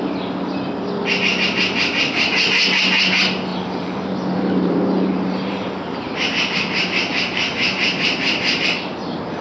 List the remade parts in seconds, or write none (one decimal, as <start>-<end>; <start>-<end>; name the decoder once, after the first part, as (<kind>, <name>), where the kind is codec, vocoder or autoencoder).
3.5-8.6 (vocoder, BigVGAN v2)